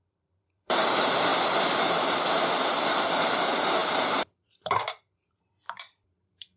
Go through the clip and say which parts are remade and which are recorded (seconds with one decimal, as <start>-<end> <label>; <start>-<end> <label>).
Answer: 0.0-1.3 remade; 1.3-2.9 recorded; 2.9-6.6 remade